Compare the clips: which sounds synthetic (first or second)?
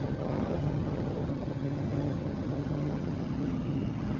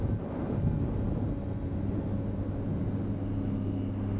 first